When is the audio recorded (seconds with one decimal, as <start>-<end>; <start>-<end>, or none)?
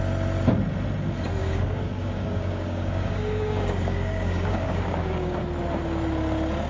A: 0.0-1.4; 5.4-6.7